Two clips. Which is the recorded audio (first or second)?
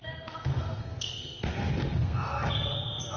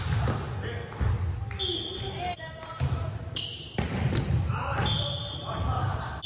second